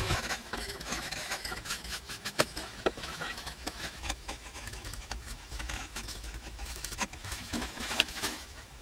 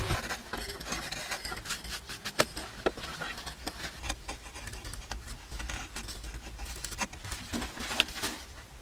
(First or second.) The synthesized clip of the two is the first